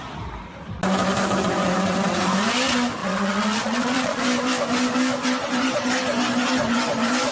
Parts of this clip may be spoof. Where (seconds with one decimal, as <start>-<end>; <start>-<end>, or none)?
3.0-4.2